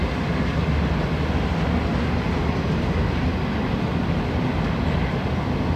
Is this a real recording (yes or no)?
yes